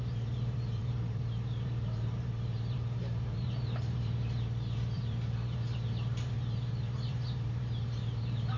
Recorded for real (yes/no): no